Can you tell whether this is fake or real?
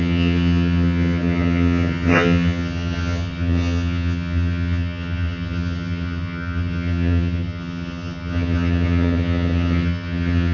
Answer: fake